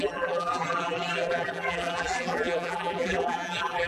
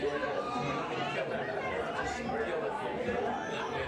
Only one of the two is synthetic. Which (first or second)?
first